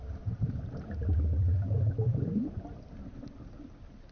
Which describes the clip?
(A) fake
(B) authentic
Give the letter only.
B